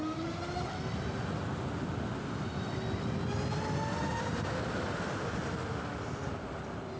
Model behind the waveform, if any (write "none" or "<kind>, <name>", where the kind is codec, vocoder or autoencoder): none